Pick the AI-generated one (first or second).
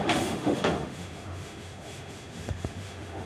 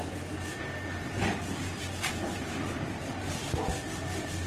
first